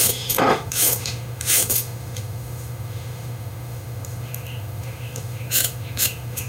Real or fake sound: fake